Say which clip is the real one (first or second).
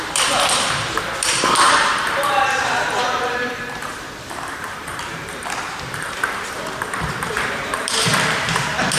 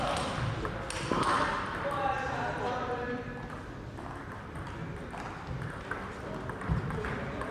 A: second